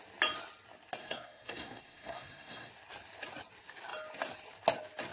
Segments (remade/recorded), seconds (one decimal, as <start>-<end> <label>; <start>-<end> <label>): 0.0-1.0 recorded; 1.0-2.7 remade; 2.7-5.1 recorded